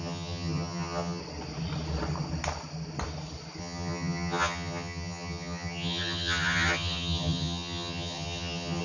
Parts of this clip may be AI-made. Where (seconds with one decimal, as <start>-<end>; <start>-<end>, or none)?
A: 0.0-1.2; 3.6-8.8